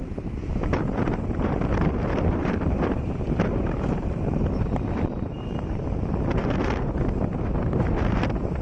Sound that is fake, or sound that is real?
fake